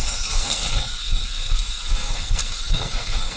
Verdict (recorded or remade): remade